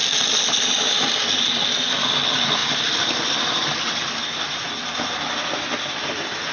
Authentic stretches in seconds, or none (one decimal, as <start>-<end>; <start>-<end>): 1.4-2.6; 4.0-6.5